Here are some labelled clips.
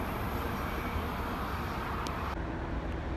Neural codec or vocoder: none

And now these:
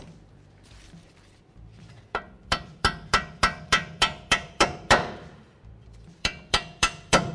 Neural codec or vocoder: vocoder, BigVGAN v2